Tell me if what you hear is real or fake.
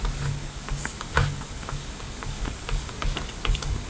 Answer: fake